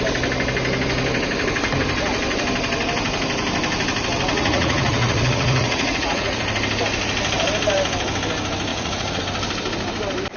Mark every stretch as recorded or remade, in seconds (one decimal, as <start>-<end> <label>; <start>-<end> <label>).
0.0-4.3 recorded; 4.3-6.4 remade; 6.4-8.7 recorded; 8.7-9.2 remade; 9.2-10.4 recorded

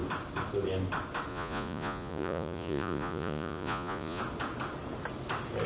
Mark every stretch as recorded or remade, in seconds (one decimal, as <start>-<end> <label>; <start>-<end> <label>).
0.0-1.3 recorded; 1.3-4.2 remade; 4.2-5.7 recorded